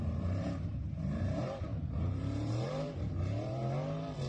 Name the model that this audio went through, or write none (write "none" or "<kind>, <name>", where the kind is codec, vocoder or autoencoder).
vocoder, BigVGAN v2